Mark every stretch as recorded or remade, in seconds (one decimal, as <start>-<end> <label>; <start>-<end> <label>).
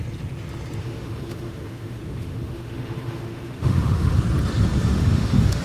0.0-0.8 recorded; 0.8-4.2 remade; 4.2-4.9 recorded; 4.9-5.6 remade